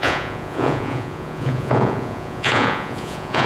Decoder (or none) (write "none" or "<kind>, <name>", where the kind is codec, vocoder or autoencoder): vocoder, Vocos